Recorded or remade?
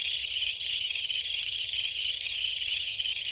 remade